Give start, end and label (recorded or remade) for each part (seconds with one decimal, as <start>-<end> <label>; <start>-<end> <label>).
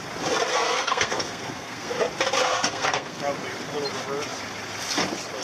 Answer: 0.0-0.5 recorded; 0.5-1.9 remade; 1.9-2.4 recorded; 2.4-3.2 remade; 3.2-5.4 recorded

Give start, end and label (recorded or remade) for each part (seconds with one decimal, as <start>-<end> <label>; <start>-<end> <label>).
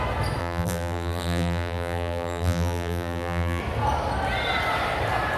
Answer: 0.0-0.4 recorded; 0.4-3.6 remade; 3.6-5.4 recorded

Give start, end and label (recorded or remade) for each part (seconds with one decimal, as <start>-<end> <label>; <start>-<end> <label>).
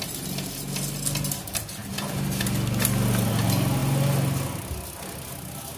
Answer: 0.0-5.8 recorded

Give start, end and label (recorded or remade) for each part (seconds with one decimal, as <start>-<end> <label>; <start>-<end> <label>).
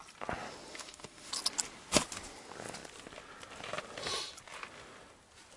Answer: 0.0-0.7 recorded; 0.7-1.3 remade; 1.3-5.6 recorded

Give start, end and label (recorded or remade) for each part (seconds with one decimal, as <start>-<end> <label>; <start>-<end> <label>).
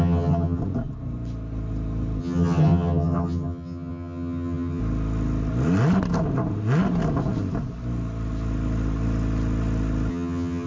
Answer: 0.0-0.6 remade; 0.6-2.2 recorded; 2.2-4.8 remade; 4.8-10.1 recorded; 10.1-10.7 remade